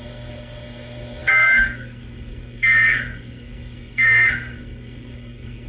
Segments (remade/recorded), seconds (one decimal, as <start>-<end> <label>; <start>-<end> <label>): 0.0-5.7 remade